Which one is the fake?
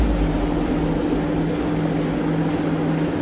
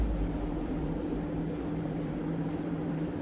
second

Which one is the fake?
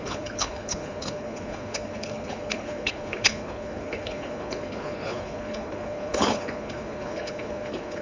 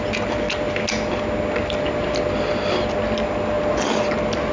first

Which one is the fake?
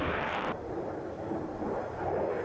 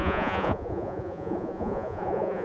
second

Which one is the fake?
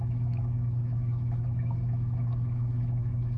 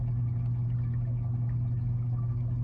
first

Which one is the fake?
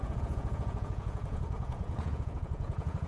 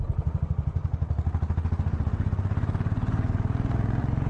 first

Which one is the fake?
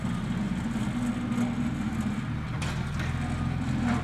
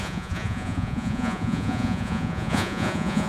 second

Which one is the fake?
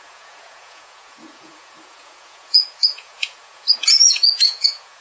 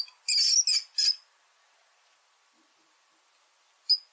first